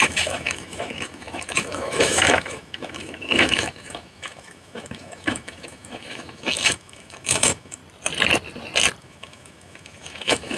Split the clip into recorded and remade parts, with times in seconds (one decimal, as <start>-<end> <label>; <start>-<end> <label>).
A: 0.0-7.8 remade; 7.8-9.0 recorded; 9.0-10.6 remade